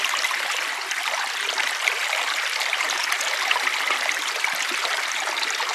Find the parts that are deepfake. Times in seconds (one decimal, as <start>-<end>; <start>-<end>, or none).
2.0-3.1